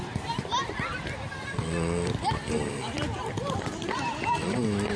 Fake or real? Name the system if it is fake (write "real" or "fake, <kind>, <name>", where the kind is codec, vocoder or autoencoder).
real